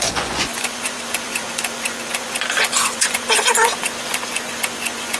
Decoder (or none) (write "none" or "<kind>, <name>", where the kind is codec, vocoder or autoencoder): vocoder, Vocos